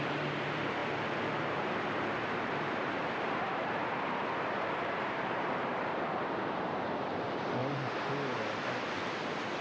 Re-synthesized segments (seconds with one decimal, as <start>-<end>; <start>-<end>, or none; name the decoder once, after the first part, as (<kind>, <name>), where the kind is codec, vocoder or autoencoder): 0.0-0.8 (vocoder, BigVGAN v2); 1.3-7.6